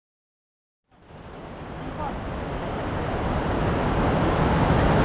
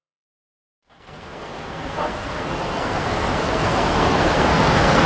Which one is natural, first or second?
first